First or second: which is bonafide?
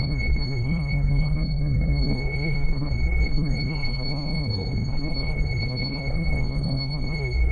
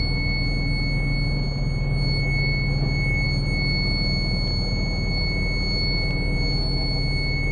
second